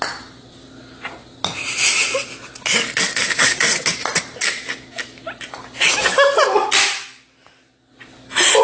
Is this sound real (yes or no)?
yes